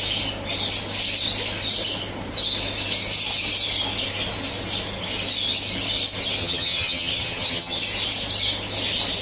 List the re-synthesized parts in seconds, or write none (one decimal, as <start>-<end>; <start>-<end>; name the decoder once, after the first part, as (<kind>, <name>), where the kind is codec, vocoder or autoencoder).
6.4-7.8 (vocoder, HiFi-GAN)